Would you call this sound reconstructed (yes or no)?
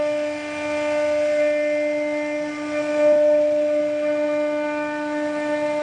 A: no